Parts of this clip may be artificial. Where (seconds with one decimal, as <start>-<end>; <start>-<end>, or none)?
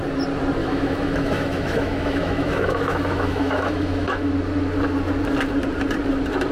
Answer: 0.6-4.3